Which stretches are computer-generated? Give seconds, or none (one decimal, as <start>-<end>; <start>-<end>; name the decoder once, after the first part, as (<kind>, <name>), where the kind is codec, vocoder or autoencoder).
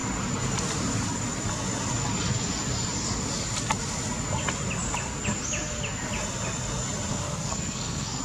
7.1-8.2 (codec, SNAC)